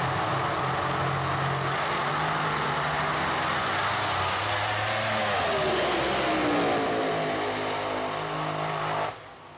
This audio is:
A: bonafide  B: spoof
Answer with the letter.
A